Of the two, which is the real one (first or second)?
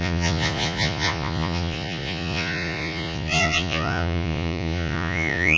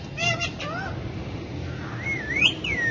second